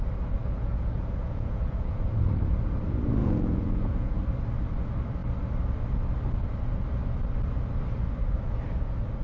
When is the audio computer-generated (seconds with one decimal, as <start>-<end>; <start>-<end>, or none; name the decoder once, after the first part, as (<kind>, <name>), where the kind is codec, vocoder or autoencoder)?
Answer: 0.4-2.0 (vocoder, Vocos); 3.2-4.2